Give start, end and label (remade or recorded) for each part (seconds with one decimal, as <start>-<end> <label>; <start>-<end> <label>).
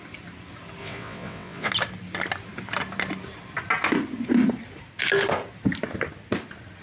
0.0-0.8 recorded; 0.8-1.7 remade; 1.7-6.8 recorded